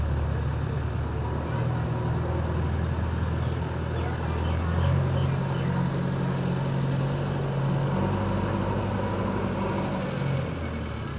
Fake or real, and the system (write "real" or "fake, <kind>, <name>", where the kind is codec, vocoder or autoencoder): real